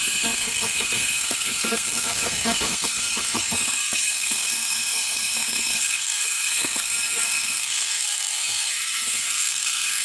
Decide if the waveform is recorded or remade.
remade